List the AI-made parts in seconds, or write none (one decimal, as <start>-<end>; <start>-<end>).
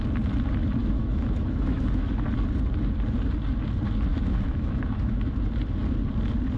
0.8-2.1; 4.1-5.4